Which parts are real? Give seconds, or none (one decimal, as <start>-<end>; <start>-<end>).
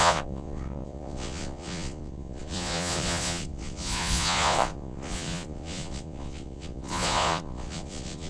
none